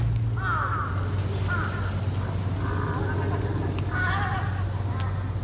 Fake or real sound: real